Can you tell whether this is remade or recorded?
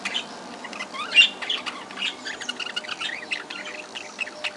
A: recorded